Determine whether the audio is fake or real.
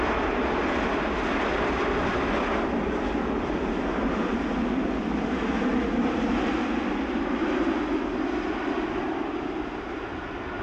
real